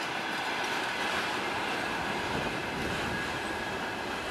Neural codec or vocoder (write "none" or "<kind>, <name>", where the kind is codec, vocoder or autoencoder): vocoder, BigVGAN v2